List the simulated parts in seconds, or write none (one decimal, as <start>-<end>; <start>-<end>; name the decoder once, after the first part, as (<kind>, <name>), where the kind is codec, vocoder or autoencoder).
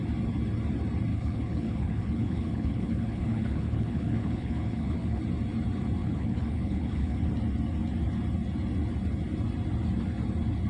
1.1-5.2 (codec, HILCodec); 6.0-7.3